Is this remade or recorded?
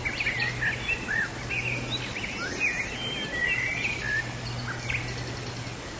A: recorded